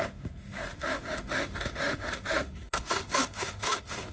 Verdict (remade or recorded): remade